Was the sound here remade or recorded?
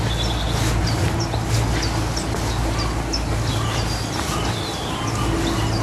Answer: recorded